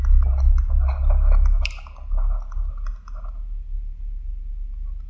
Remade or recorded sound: recorded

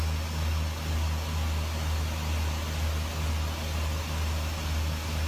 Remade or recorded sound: recorded